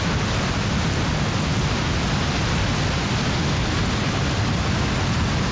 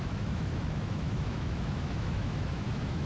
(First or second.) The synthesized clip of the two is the second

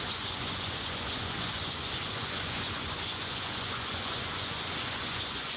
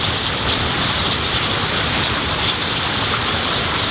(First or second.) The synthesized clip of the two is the first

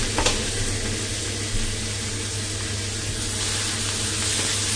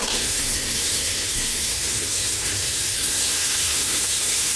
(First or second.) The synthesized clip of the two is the second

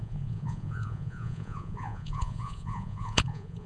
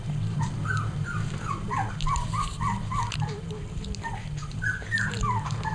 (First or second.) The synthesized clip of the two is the first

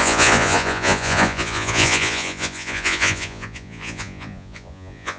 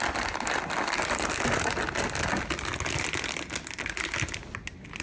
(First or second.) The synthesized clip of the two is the first